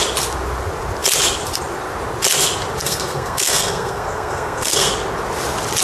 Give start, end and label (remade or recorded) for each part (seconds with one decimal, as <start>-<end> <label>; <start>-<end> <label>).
0.0-2.8 recorded; 2.8-4.9 remade; 4.9-5.8 recorded